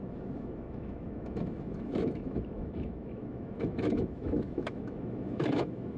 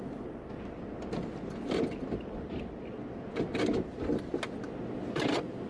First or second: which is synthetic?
first